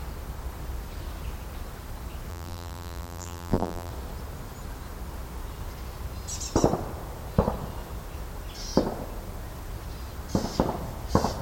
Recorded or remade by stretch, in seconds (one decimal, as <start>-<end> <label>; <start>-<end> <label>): 0.0-2.3 recorded; 2.3-3.9 remade; 3.9-11.4 recorded